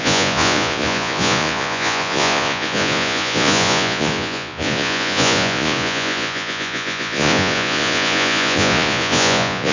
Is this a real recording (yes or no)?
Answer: no